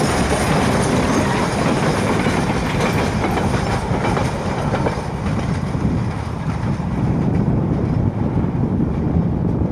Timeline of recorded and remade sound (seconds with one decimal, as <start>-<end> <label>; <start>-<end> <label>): 0.0-6.0 recorded; 6.0-7.8 remade; 7.8-9.7 recorded